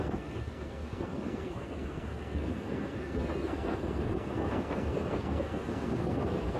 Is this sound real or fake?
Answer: fake